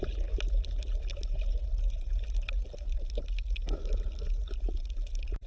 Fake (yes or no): no